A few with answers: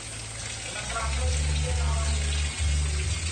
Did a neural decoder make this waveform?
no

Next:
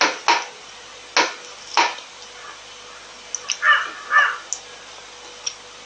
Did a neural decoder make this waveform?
no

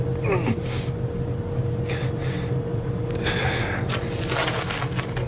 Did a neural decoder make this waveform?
no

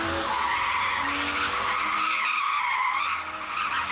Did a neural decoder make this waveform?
no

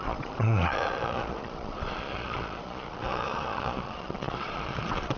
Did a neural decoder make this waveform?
yes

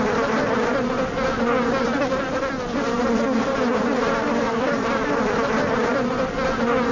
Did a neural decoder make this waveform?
no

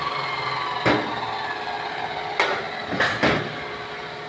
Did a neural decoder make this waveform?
no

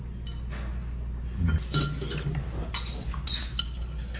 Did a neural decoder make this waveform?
no